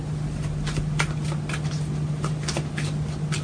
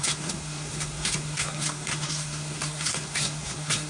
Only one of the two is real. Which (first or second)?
first